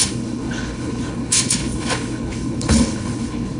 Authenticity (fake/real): fake